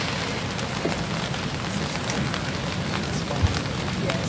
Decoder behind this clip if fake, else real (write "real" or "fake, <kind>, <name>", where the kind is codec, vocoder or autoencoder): real